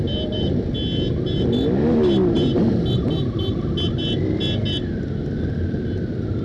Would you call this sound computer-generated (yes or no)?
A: no